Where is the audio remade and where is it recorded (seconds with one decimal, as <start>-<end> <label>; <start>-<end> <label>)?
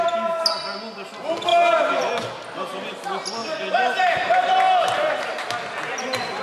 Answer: 0.0-1.5 recorded; 1.5-2.1 remade; 2.1-3.4 recorded; 3.4-4.5 remade; 4.5-6.4 recorded